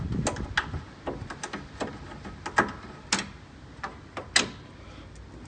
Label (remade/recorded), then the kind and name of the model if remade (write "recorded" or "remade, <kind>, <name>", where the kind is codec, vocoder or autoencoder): recorded